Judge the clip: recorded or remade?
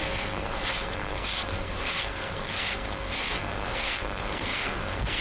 remade